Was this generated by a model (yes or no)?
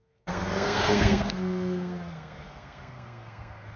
yes